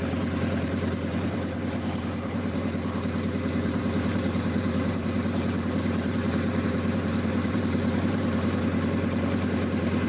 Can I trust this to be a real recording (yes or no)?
no